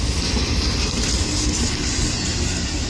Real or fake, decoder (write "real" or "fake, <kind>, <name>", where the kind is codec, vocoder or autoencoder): real